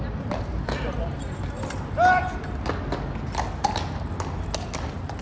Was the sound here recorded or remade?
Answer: recorded